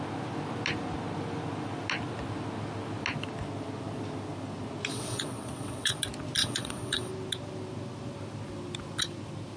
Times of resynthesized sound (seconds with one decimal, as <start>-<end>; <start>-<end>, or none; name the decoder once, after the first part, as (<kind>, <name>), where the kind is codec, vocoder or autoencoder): 4.9-6.0 (vocoder, WaveNeXt); 6.4-7.1